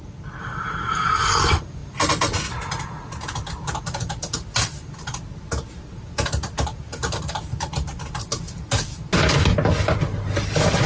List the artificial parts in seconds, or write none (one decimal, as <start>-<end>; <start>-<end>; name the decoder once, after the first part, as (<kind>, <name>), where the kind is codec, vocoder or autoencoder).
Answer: none